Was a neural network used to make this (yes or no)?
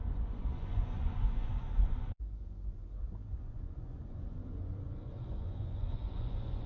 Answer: yes